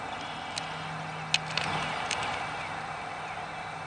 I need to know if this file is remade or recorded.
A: recorded